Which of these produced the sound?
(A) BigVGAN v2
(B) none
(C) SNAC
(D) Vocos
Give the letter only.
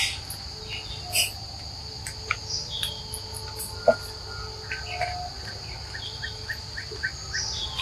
B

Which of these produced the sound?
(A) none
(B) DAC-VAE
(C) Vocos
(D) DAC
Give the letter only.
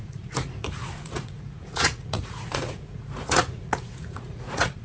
C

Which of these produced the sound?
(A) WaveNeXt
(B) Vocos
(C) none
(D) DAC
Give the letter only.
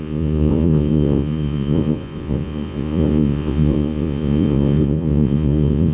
B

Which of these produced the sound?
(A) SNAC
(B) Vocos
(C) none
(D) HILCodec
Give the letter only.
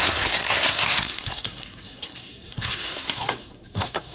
A